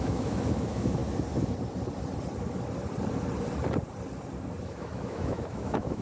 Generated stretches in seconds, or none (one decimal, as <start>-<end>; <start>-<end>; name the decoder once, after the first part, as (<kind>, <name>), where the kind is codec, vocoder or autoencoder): 0.0-1.0 (autoencoder, DAC-VAE); 4.6-6.0